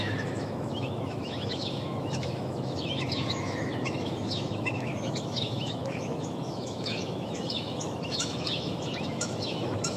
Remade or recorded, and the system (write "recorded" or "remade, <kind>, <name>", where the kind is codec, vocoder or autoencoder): remade, autoencoder, DAC-VAE